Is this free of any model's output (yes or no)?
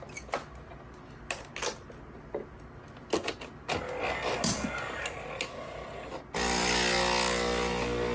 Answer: yes